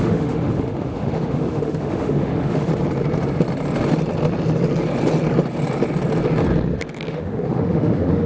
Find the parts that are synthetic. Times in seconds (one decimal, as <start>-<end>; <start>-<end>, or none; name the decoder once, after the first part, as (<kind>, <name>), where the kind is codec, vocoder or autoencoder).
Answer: 0.0-2.7 (autoencoder, DAC-VAE); 7.1-8.3